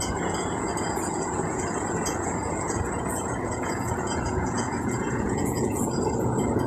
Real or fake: fake